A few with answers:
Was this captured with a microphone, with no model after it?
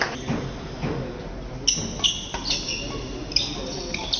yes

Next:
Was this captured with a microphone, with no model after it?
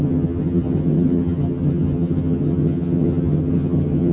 no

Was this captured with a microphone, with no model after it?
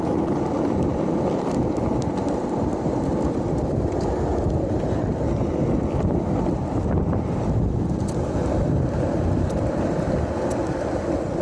yes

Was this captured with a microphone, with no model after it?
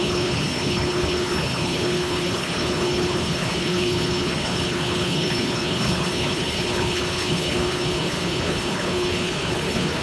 no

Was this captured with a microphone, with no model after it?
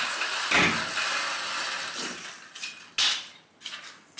yes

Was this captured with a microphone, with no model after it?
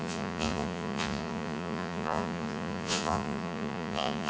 no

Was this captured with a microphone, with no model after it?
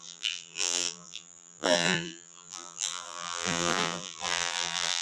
no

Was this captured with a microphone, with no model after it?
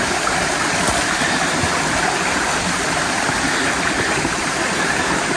yes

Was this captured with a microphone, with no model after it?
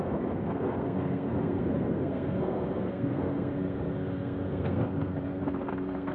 no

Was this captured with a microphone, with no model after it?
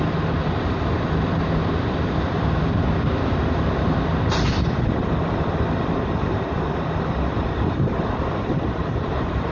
no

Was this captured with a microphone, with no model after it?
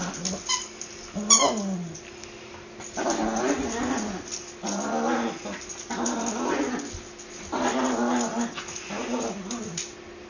yes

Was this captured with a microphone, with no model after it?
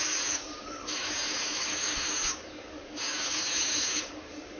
no